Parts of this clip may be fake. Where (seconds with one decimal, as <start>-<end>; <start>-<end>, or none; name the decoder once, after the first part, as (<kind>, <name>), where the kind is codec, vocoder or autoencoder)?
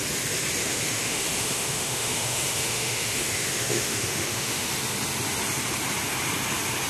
0.6-4.7 (autoencoder, DAC-VAE)